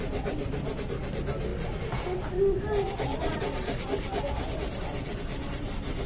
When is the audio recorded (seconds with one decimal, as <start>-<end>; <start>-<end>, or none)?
0.0-6.1